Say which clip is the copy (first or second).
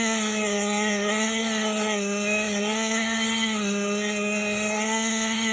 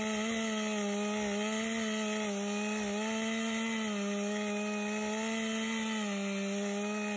first